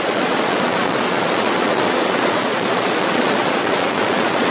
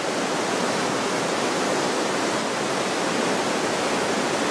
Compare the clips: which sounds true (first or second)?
second